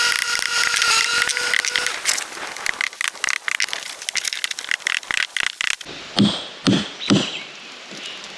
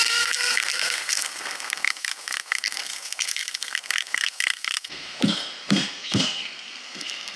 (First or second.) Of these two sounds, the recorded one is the first